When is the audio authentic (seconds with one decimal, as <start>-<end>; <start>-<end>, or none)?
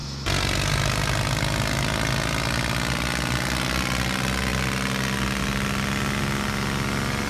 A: 0.0-7.3